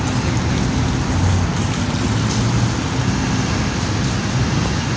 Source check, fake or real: real